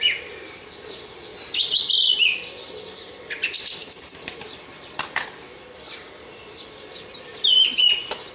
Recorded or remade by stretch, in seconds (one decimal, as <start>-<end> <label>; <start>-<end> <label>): 0.0-8.3 recorded